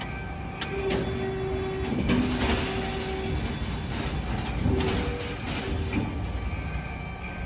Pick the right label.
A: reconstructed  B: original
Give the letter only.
B